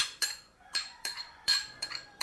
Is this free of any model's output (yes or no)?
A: no